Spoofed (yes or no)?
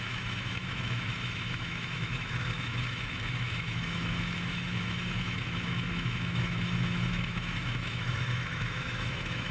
yes